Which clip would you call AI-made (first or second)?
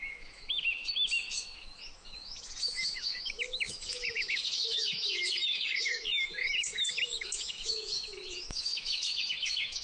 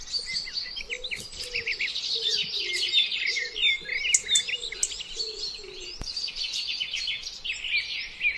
first